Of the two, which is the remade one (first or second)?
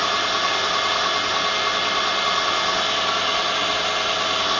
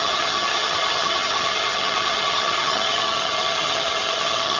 second